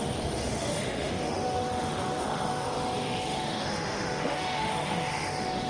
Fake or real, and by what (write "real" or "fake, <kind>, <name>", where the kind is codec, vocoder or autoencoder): fake, autoencoder, DAC-VAE